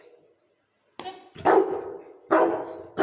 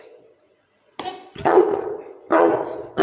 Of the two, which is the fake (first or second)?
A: second